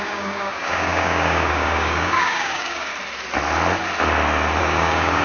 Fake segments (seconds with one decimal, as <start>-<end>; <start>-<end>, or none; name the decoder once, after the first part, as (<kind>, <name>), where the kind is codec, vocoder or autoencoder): 0.0-2.9 (codec, DAC); 4.6-5.2